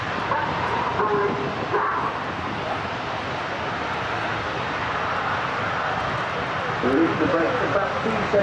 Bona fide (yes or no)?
yes